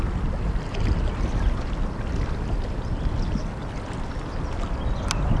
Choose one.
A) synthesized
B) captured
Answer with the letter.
B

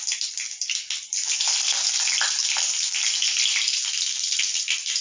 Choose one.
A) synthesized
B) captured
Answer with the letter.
B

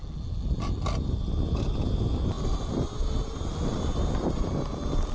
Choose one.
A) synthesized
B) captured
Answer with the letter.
B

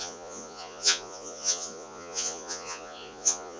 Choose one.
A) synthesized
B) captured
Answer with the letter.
A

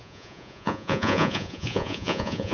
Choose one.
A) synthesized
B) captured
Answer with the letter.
A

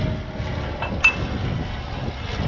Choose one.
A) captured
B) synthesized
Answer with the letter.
A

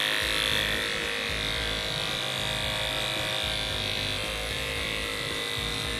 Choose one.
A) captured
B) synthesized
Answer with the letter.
A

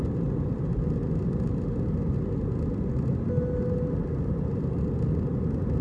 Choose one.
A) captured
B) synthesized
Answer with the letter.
A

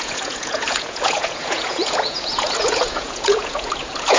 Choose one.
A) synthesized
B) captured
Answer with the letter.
A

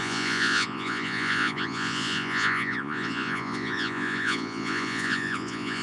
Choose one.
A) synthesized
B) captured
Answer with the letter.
A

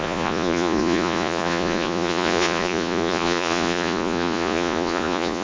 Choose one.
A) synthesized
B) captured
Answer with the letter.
A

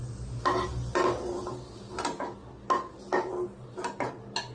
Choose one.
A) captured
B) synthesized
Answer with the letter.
A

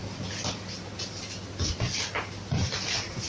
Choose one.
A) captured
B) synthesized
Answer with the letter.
A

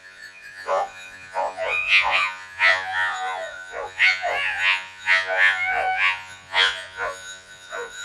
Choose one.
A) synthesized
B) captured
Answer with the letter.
A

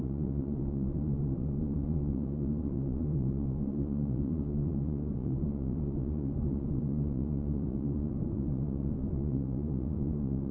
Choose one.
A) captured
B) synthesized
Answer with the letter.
B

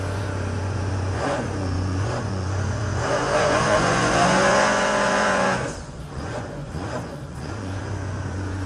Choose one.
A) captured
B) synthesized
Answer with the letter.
B